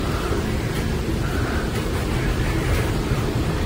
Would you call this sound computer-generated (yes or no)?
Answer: yes